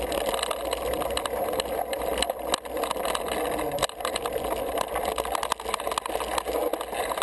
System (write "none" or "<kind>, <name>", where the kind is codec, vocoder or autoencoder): none